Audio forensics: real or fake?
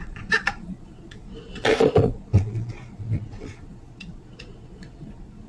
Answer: fake